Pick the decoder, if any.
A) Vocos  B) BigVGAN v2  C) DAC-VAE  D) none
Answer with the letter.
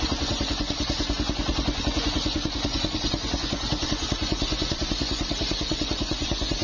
A